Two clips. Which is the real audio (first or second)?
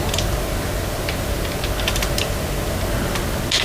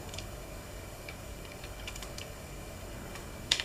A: first